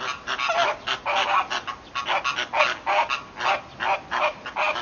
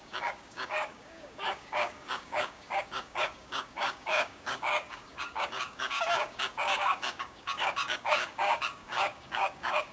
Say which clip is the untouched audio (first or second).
first